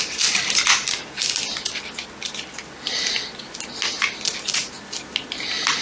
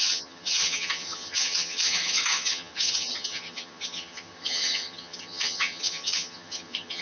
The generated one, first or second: second